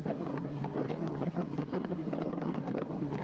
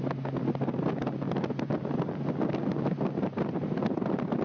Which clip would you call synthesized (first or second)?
first